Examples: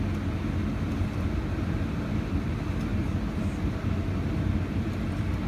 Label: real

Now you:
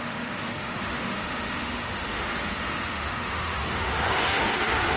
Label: fake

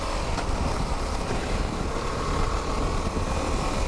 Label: real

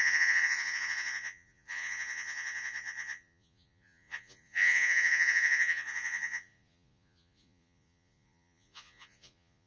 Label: fake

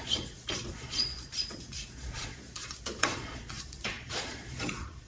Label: fake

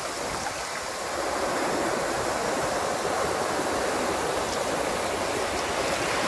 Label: real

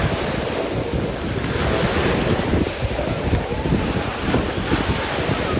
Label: real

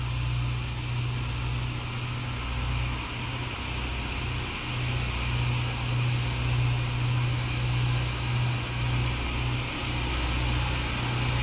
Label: real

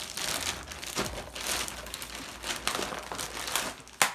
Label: real